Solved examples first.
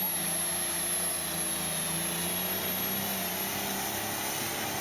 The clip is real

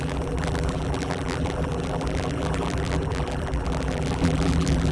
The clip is fake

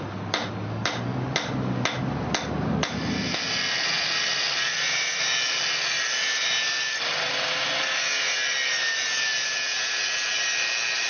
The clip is real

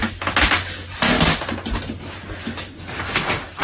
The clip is real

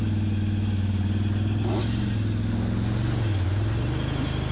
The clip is real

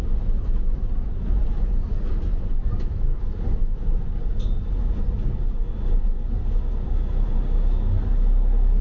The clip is real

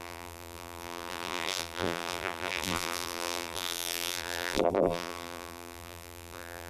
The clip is fake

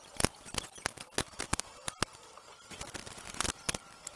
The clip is fake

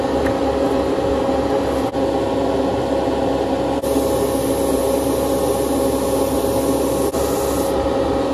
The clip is real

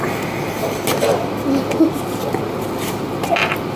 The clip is real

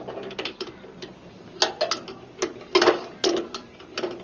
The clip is real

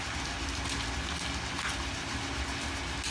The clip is real